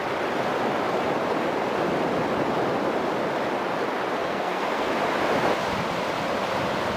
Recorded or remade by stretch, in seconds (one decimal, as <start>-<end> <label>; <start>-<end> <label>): 0.0-4.2 recorded; 4.2-4.9 remade; 4.9-7.0 recorded